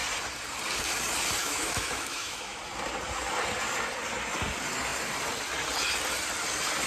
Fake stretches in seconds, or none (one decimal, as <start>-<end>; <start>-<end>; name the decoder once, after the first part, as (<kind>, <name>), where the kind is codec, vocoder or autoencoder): 1.4-2.6 (autoencoder, DAC-VAE)